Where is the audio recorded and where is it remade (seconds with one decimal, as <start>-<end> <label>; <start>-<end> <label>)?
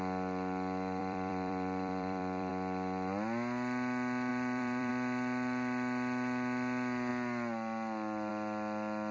0.0-1.0 recorded; 1.0-2.5 remade; 2.5-4.3 recorded; 4.3-4.9 remade; 4.9-9.1 recorded